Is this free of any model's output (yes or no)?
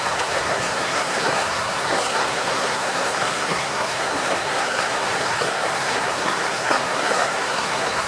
no